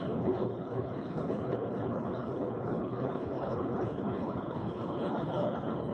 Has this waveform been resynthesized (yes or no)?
yes